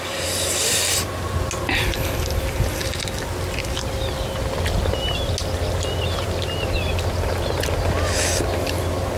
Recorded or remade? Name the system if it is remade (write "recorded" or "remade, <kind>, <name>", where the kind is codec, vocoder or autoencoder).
recorded